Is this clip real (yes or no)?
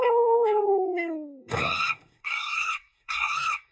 no